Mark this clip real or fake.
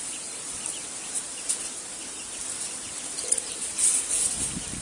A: real